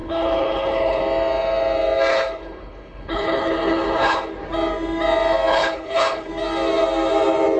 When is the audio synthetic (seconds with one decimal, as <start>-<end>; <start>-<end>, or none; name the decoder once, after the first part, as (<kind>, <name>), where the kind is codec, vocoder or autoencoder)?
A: 0.0-1.0 (codec, HILCodec); 2.1-4.3; 5.5-6.3